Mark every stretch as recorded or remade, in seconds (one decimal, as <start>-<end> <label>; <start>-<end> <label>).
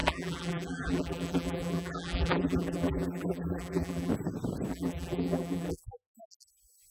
0.0-4.1 remade; 4.1-4.7 recorded; 4.7-6.1 remade; 6.1-6.9 recorded